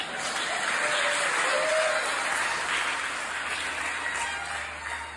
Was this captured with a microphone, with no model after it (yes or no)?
yes